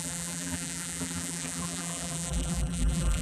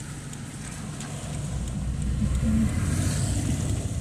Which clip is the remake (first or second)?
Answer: first